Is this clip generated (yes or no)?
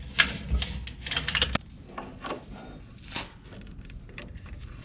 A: no